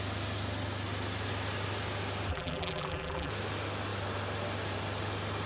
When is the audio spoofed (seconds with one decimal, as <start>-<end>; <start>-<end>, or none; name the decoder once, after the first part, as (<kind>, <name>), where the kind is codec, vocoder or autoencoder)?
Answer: 2.3-3.3 (vocoder, BigVGAN v2)